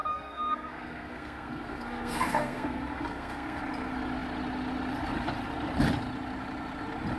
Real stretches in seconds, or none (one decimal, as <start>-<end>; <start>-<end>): 3.6-7.2